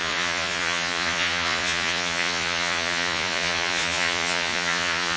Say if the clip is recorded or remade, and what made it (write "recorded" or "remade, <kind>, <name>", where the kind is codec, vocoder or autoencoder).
remade, vocoder, Vocos